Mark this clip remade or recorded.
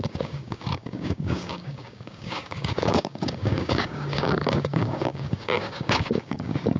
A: remade